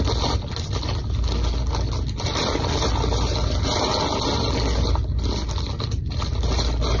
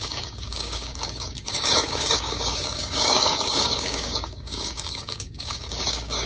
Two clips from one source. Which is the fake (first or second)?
second